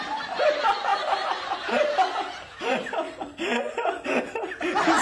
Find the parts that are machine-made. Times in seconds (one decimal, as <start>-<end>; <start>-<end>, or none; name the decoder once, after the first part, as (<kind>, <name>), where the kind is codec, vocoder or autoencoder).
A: none